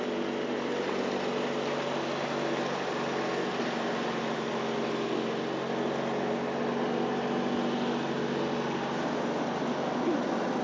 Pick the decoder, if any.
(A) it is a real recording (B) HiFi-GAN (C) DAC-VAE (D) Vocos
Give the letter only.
A